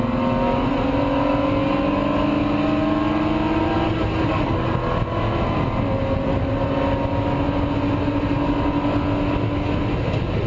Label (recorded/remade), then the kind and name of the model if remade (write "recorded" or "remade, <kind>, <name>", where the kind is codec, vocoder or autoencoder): recorded